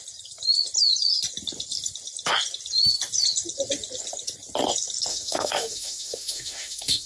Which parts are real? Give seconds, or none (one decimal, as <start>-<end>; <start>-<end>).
0.0-5.1